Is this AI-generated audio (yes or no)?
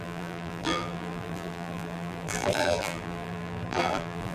yes